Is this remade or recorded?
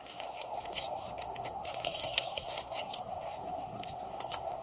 remade